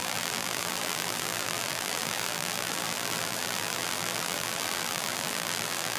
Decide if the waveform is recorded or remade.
remade